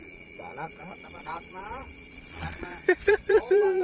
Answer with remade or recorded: remade